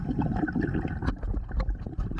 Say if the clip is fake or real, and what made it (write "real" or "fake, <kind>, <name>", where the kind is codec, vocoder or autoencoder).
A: real